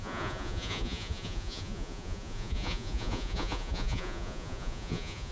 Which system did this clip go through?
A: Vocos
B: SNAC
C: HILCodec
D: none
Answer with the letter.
A